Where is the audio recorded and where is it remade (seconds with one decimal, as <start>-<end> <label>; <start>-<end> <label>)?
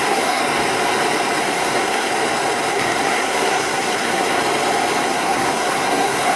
0.0-0.4 remade; 0.4-1.4 recorded; 1.4-2.1 remade; 2.1-2.7 recorded; 2.7-4.4 remade; 4.4-5.0 recorded; 5.0-6.4 remade